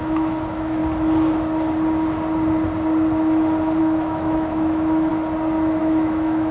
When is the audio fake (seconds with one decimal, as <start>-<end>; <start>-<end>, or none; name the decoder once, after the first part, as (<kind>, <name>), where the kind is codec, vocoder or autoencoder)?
0.0-0.8 (autoencoder, DAC-VAE); 3.8-5.1; 5.8-6.5